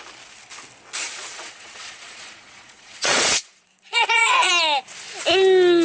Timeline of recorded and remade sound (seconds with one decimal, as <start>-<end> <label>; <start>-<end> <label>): 0.0-1.0 recorded; 1.0-4.5 remade; 4.5-5.8 recorded